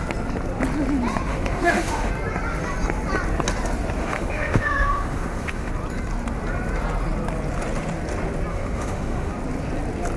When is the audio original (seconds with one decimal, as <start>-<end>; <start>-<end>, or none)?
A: 0.0-1.3; 2.1-4.0; 5.7-8.5; 9.3-10.2